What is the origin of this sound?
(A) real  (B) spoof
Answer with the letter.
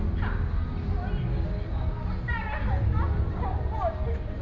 A